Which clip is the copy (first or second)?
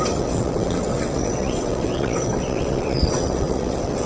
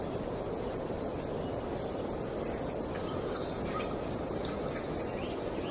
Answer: first